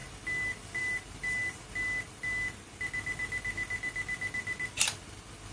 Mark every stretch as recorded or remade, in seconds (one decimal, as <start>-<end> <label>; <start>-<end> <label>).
0.0-5.5 recorded